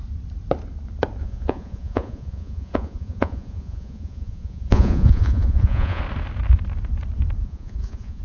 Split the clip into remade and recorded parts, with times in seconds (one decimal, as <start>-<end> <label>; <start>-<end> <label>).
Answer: 0.0-1.2 recorded; 1.2-6.0 remade; 6.0-7.4 recorded; 7.4-8.2 remade